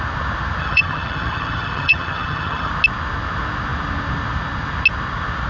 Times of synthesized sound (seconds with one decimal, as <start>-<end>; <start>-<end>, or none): 0.6-2.7